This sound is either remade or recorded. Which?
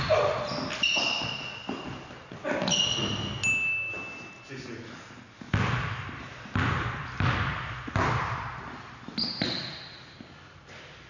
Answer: recorded